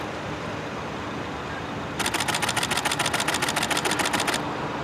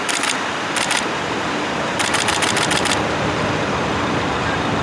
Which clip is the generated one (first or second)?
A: second